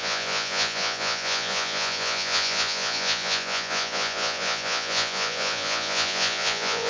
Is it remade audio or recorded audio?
remade